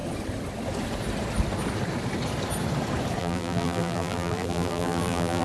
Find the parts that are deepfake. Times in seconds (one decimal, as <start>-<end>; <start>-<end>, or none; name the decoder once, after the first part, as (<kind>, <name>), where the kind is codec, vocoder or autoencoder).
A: 3.2-5.4 (vocoder, BigVGAN v2)